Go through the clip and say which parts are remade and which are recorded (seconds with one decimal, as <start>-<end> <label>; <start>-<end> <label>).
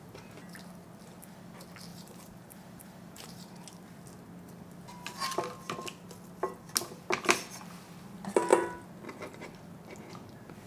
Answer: 0.0-1.9 recorded; 1.9-3.5 remade; 3.5-10.7 recorded